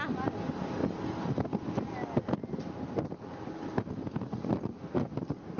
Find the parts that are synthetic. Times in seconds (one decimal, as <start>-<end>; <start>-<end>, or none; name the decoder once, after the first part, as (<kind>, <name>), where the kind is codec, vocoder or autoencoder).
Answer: none